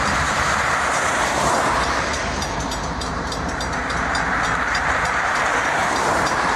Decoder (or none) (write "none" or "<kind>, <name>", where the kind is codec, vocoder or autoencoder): vocoder, BigVGAN v2